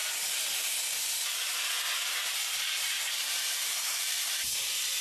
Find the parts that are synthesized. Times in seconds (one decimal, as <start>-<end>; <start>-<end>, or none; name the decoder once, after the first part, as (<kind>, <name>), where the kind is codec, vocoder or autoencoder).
2.0-4.6 (vocoder, BigVGAN v2)